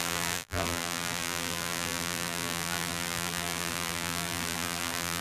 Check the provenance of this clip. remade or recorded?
remade